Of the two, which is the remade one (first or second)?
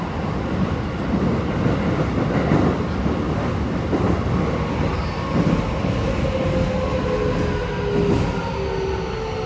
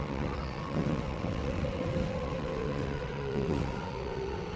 second